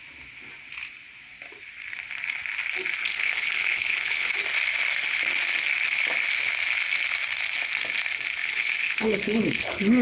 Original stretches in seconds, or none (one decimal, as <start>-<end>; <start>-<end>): 0.0-3.0; 4.3-8.4